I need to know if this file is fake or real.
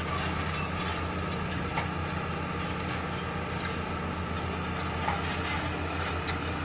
real